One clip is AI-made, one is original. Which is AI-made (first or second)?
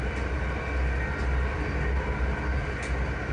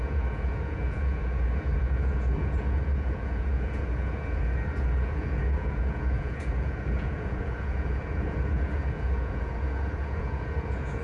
second